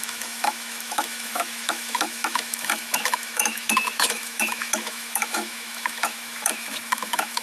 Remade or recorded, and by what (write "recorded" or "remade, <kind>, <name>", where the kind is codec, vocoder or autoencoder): remade, autoencoder, DAC-VAE